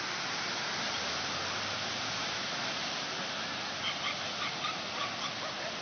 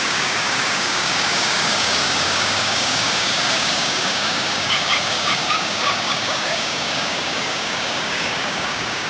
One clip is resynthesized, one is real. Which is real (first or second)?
first